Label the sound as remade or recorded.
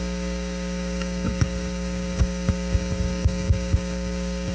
remade